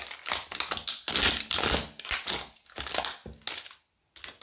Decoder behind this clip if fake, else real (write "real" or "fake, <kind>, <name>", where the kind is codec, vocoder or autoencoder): real